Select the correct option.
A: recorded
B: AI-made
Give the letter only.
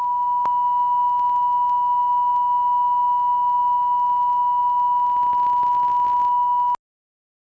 A